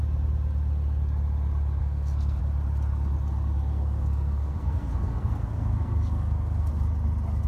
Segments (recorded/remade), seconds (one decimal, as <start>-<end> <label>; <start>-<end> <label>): 0.0-1.8 recorded; 1.8-2.4 remade; 2.4-3.7 recorded; 3.7-6.7 remade; 6.7-7.5 recorded